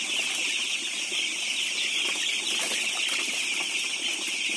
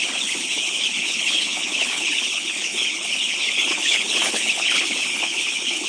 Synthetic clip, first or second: second